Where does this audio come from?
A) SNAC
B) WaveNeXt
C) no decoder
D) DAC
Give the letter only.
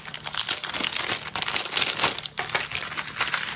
C